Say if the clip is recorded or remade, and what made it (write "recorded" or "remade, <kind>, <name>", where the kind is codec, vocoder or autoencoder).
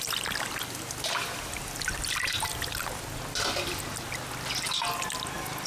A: recorded